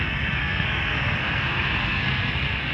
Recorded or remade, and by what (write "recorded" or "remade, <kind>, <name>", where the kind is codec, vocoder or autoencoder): remade, codec, SNAC